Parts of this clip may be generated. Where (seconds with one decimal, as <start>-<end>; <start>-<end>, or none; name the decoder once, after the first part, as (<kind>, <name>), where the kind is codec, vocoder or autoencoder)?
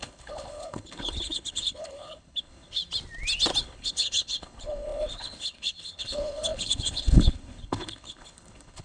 0.0-2.8 (codec, HILCodec); 3.6-8.8